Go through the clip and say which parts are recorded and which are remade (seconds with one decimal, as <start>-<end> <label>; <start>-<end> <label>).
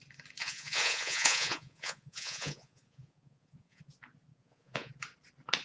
0.0-0.4 recorded; 0.4-3.8 remade; 3.8-4.3 recorded; 4.3-4.9 remade; 4.9-5.6 recorded